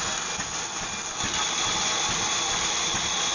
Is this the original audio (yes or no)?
yes